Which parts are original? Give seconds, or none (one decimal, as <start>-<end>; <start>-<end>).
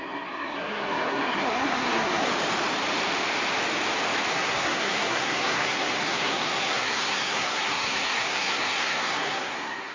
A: 2.3-4.3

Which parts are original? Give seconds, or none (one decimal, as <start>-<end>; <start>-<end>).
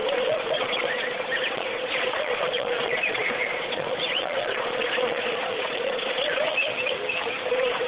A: 6.5-7.5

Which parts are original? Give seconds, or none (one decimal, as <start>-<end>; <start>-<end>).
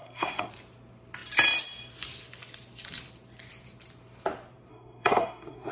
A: 0.5-4.7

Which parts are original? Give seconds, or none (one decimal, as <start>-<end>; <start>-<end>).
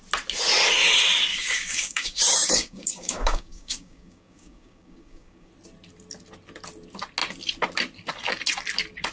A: 0.0-1.3; 5.5-9.1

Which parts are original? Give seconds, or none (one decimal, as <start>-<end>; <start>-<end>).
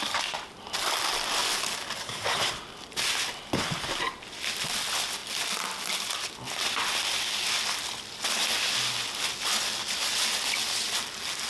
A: 0.0-11.5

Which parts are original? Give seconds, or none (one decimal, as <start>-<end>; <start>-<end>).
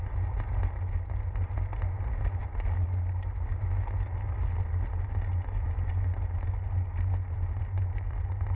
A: 0.0-8.6